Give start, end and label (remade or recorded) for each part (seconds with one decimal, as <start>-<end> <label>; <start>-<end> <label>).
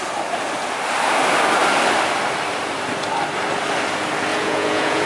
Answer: 0.0-4.3 recorded; 4.3-5.1 remade